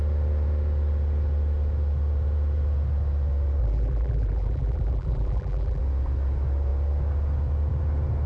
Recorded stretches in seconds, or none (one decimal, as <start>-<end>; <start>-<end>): 0.0-3.6; 5.8-8.3